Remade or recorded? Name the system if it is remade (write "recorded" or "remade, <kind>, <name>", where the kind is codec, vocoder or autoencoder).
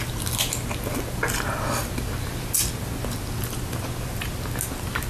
recorded